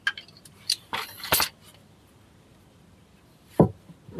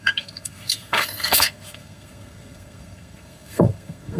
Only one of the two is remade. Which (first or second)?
second